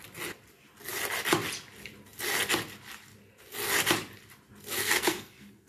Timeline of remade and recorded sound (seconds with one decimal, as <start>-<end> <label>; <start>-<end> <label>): 0.0-4.8 recorded; 4.8-5.7 remade